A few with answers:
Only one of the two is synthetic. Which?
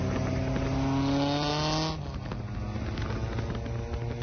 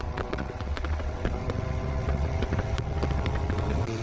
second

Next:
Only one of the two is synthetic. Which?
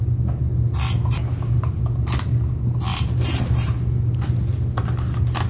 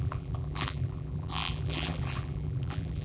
second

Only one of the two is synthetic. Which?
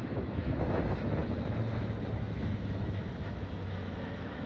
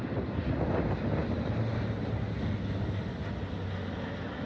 first